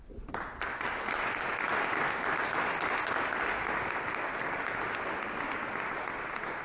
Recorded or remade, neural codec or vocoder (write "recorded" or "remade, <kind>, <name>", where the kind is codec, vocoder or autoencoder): recorded